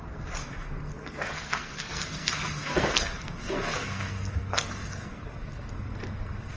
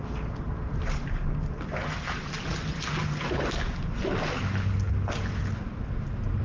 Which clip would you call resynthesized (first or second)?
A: first